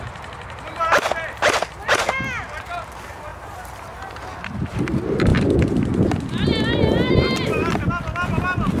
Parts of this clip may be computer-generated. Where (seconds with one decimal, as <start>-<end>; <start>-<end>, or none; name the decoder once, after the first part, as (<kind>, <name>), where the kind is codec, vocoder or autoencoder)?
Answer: none